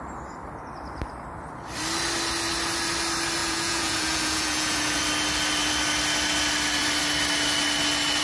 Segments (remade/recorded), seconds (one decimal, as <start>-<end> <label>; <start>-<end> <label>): 0.0-3.4 recorded; 3.4-5.0 remade; 5.0-8.2 recorded